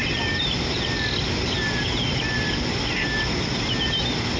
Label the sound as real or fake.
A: real